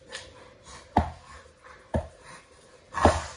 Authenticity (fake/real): real